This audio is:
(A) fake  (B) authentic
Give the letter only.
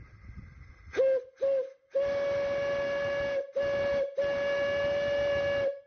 B